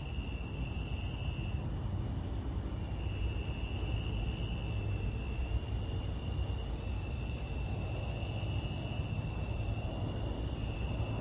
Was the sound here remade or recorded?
recorded